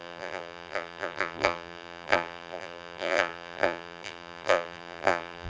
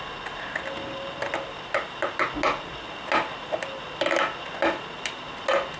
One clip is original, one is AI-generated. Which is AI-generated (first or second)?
first